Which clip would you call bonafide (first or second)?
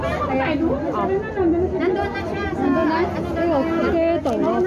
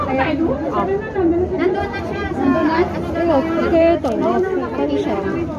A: first